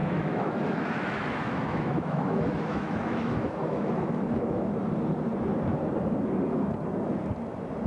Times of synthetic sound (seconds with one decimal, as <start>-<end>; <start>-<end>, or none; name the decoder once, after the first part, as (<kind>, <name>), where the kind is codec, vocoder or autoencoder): 0.0-4.7 (autoencoder, DAC-VAE)

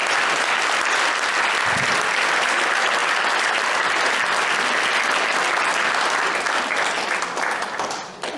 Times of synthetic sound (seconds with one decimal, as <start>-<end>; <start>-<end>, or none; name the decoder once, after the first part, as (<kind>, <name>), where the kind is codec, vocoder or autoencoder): none

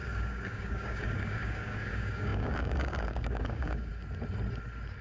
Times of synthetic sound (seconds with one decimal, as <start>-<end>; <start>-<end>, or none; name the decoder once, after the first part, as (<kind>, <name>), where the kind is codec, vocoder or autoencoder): 0.0-3.9 (codec, DAC)

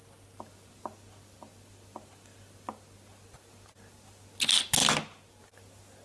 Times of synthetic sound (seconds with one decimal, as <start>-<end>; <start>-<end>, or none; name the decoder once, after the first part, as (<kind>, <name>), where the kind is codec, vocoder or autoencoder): none

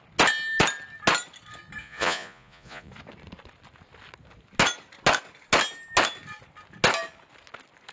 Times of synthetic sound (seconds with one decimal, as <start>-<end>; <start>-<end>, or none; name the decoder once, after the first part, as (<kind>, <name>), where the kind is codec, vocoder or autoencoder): 1.8-2.9 (vocoder, Vocos)

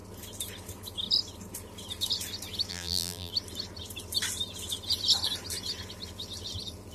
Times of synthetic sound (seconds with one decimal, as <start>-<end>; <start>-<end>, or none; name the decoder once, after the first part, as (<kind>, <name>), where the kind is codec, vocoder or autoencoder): 2.7-3.3 (vocoder, BigVGAN v2)

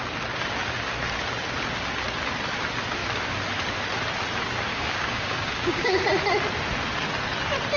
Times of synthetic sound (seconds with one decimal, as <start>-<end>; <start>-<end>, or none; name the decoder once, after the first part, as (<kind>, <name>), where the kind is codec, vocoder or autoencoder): 4.7-6.0 (codec, DAC)